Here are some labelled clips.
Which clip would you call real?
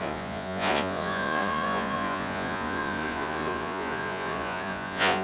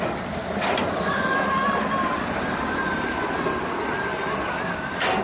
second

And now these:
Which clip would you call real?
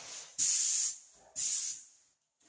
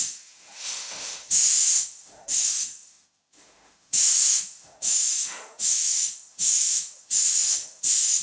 first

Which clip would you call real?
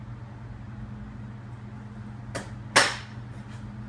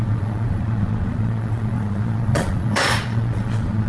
first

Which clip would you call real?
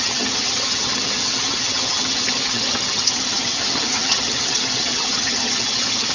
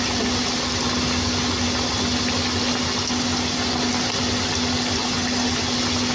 second